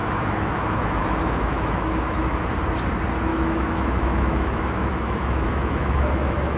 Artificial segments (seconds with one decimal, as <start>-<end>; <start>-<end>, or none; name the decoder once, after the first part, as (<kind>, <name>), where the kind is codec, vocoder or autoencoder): 0.0-2.4 (autoencoder, DAC-VAE); 3.3-6.6